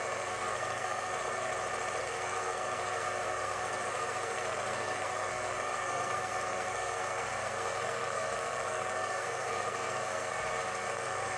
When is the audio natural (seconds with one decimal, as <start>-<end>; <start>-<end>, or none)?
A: 1.5-2.0